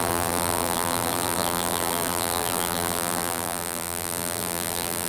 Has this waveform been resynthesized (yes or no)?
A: yes